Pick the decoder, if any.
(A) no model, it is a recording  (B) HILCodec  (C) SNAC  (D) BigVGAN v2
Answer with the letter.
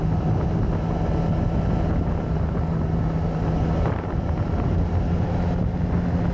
A